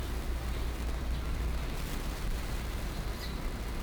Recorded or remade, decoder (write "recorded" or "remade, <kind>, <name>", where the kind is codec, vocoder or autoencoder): recorded